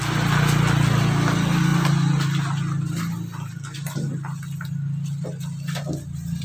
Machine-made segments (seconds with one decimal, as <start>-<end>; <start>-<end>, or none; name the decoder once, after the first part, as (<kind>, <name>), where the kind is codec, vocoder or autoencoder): none

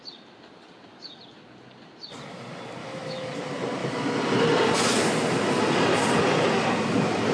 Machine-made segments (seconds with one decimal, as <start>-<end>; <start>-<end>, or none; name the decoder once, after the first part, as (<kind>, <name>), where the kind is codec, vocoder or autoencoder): 2.8-3.3 (autoencoder, DAC-VAE)

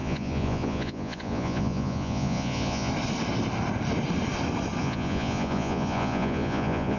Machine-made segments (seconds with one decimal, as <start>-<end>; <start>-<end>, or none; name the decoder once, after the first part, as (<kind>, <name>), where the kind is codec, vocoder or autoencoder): 0.0-2.9 (vocoder, Vocos); 4.8-7.0

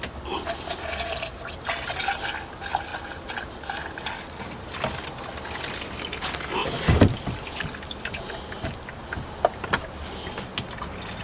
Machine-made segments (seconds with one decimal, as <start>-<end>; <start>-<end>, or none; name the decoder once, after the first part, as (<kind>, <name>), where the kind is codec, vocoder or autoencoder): 2.9-4.7 (vocoder, BigVGAN v2); 6.6-7.3

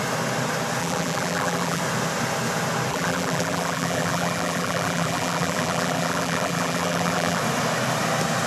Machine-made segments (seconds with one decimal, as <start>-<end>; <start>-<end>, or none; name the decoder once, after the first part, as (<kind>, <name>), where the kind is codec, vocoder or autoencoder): 0.8-1.8 (vocoder, BigVGAN v2); 2.9-7.4